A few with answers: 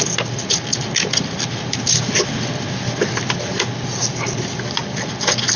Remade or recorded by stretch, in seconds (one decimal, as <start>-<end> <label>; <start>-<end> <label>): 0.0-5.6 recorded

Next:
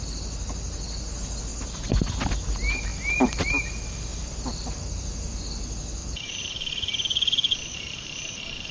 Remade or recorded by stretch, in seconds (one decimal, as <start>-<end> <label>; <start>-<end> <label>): 0.0-1.5 recorded; 1.5-2.1 remade; 2.1-4.1 recorded; 4.1-5.4 remade; 5.4-6.0 recorded; 6.0-8.7 remade

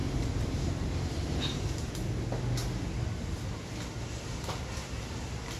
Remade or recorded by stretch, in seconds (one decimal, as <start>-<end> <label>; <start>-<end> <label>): 0.0-1.9 remade; 1.9-5.6 recorded

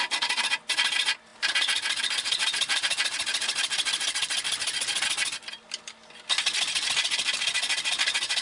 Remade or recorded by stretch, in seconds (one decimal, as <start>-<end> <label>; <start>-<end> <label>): 0.0-8.4 recorded

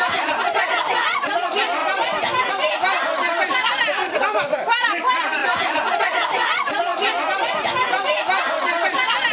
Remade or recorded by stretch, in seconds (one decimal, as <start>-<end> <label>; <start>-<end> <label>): 0.0-1.8 remade; 1.8-2.5 recorded; 2.5-5.4 remade; 5.4-6.0 recorded; 6.0-6.9 remade; 6.9-8.4 recorded; 8.4-9.3 remade

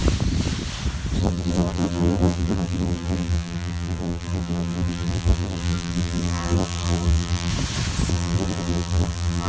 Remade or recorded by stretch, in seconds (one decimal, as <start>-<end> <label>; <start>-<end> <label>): 0.0-1.2 recorded; 1.2-7.5 remade; 7.5-8.1 recorded; 8.1-9.5 remade